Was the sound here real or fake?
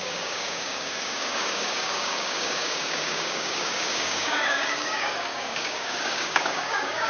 fake